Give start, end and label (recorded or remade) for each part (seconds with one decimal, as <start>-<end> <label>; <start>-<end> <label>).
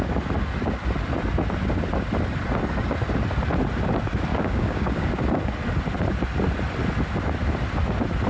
0.0-4.3 recorded; 4.3-5.1 remade; 5.1-8.3 recorded